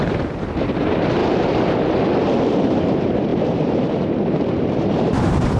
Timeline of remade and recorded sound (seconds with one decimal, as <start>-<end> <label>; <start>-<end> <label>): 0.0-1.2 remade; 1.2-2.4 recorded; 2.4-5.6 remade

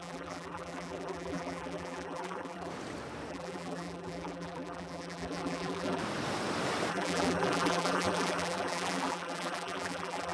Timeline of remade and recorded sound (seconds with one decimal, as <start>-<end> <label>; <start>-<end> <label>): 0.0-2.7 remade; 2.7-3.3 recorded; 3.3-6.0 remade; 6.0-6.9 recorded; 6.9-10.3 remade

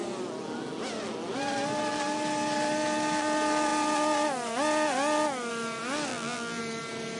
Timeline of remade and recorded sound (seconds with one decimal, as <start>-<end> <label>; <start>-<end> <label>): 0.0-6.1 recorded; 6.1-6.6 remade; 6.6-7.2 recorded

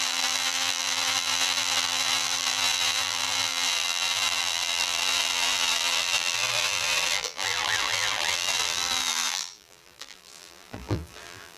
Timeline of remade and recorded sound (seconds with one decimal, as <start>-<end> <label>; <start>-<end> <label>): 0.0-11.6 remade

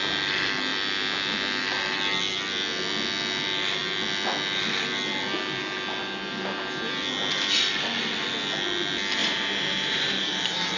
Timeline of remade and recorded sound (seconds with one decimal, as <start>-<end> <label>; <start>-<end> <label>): 0.0-9.2 recorded; 9.2-10.8 remade